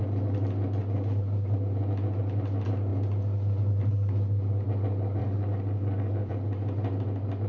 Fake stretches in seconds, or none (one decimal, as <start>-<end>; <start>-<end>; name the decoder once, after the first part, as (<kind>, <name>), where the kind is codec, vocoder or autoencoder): 5.2-6.3 (codec, DAC)